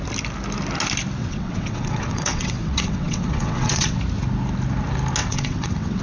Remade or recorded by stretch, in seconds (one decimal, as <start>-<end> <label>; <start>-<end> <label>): 0.0-1.2 recorded; 1.2-4.0 remade; 4.0-5.2 recorded; 5.2-6.0 remade